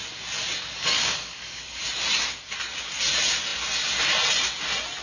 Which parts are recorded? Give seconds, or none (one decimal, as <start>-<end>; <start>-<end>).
0.0-0.7; 1.8-5.0